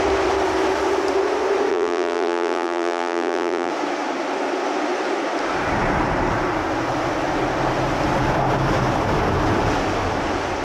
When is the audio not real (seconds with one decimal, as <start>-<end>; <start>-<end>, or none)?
1.7-3.7

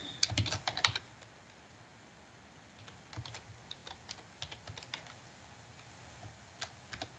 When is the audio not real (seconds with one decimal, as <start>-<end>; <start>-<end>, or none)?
none

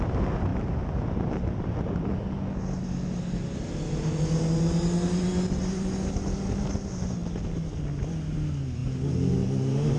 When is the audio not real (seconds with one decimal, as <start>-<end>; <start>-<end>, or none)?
none

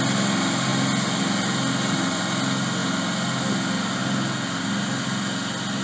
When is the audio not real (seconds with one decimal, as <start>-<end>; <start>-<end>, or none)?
none

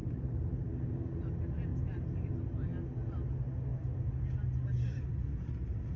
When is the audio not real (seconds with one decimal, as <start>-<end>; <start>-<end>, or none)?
0.0-0.5; 1.7-2.3

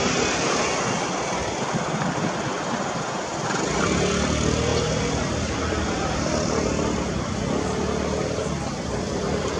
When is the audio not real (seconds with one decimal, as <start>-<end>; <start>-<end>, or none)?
4.7-6.5

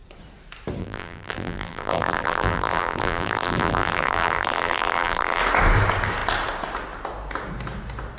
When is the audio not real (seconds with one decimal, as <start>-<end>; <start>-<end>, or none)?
0.8-5.4